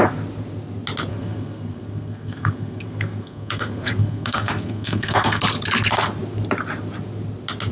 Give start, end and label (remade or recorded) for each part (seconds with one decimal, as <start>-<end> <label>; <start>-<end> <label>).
0.0-1.1 recorded; 1.1-5.4 remade; 5.4-7.7 recorded